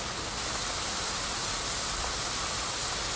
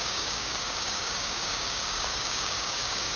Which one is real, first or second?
first